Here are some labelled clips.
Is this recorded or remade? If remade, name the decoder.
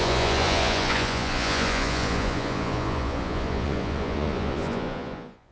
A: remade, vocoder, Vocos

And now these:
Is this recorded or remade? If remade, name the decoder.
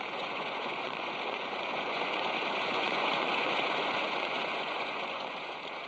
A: remade, vocoder, Vocos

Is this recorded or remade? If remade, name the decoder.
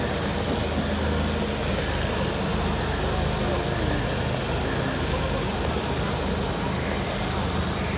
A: recorded